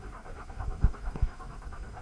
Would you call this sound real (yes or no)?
no